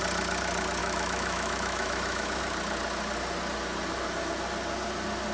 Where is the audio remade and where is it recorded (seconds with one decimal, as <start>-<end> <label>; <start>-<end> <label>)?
0.0-0.8 recorded; 0.8-2.4 remade; 2.4-5.3 recorded